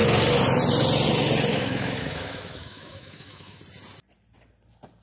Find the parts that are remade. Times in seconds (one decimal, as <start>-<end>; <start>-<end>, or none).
1.5-3.6